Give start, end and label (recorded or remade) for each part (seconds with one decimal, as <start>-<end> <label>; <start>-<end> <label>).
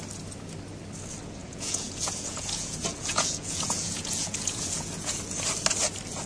0.0-1.4 recorded; 1.4-5.2 remade; 5.2-6.3 recorded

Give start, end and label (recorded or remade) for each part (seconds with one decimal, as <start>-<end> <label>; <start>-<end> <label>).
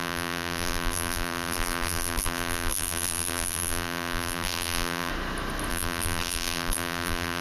0.0-5.1 remade; 5.1-5.7 recorded; 5.7-7.4 remade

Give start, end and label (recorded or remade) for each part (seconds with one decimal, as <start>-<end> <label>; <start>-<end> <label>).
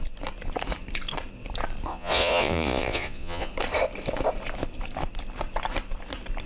0.0-1.9 recorded; 1.9-3.5 remade; 3.5-6.5 recorded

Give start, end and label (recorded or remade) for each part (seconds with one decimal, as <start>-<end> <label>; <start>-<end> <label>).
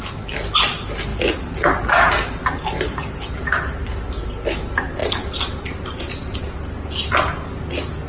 0.0-8.1 recorded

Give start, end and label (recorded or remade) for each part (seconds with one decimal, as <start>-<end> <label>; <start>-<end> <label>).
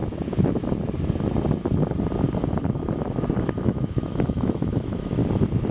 0.0-3.4 recorded; 3.4-5.2 remade; 5.2-5.7 recorded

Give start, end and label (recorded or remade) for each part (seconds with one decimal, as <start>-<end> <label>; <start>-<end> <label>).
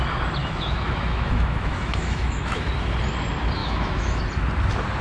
0.0-0.4 recorded; 0.4-2.7 remade; 2.7-3.6 recorded; 3.6-4.2 remade; 4.2-5.0 recorded